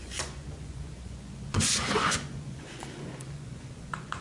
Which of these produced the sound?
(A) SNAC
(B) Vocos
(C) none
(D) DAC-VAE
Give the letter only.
B